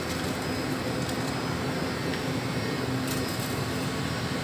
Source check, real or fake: real